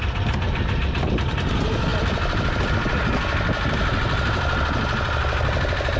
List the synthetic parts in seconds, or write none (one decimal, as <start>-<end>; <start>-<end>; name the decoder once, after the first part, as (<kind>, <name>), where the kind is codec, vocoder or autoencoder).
1.9-2.7 (vocoder, BigVGAN v2)